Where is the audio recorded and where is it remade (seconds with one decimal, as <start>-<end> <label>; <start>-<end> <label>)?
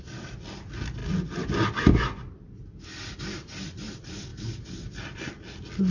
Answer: 0.0-5.9 recorded